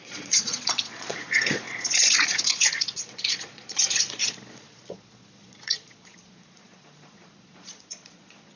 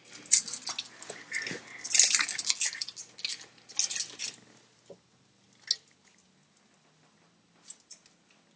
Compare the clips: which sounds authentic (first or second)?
second